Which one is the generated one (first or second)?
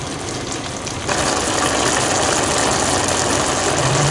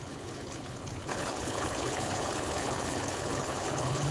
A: second